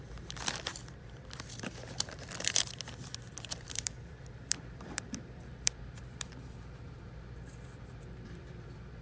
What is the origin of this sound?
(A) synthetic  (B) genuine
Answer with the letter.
A